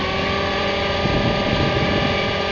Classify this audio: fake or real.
fake